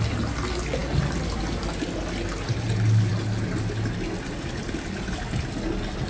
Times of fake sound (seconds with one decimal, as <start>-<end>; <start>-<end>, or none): none